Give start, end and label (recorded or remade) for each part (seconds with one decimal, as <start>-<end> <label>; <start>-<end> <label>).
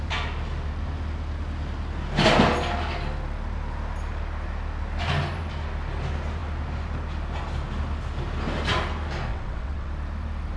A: 0.0-9.3 recorded; 9.3-9.9 remade; 9.9-10.6 recorded